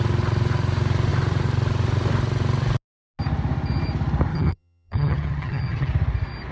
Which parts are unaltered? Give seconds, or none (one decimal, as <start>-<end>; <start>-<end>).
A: 0.0-4.3; 5.9-6.5